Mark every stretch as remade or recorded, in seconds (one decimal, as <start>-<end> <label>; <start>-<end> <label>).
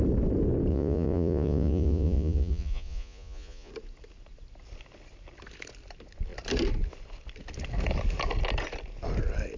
0.0-0.7 recorded; 0.7-3.7 remade; 3.7-9.6 recorded